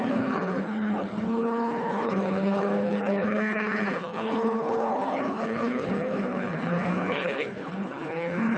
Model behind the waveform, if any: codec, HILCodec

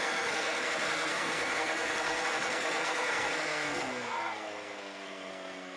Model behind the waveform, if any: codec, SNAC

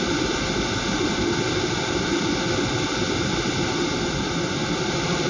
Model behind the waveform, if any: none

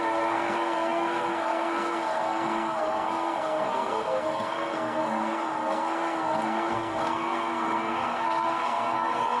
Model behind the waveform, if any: codec, SNAC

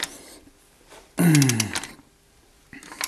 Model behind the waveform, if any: none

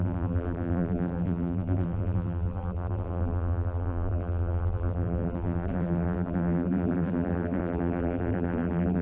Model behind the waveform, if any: vocoder, BigVGAN v2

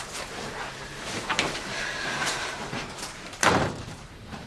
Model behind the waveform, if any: vocoder, BigVGAN v2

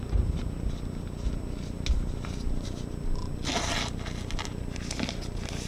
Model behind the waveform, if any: none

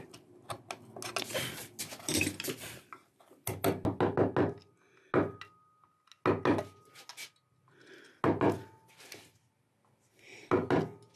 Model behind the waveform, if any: none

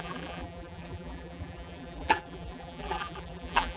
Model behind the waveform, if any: vocoder, BigVGAN v2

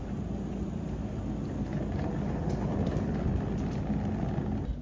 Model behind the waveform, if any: none